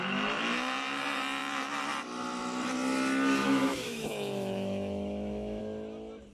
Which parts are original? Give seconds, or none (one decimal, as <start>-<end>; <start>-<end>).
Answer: 0.0-3.4; 5.6-6.3